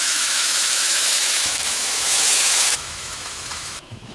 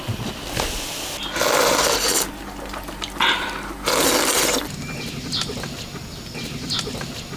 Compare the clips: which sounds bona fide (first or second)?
second